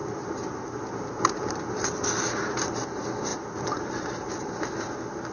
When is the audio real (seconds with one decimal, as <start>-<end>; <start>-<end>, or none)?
0.0-3.3; 4.6-5.3

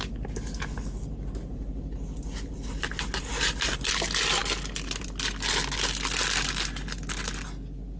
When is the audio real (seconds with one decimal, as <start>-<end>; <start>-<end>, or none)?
0.0-8.0

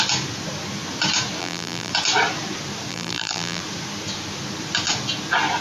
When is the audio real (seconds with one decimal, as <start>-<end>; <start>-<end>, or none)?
0.0-1.4; 1.9-2.9; 3.6-5.6

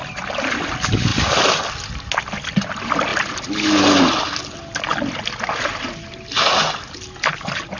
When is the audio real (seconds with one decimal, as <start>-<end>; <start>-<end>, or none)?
0.0-1.1; 1.6-7.8

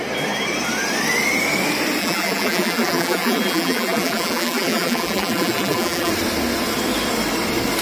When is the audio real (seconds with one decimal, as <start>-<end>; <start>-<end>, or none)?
0.0-2.0; 6.1-7.8

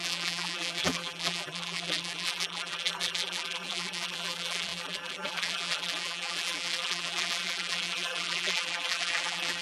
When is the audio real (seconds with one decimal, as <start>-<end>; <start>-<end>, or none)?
none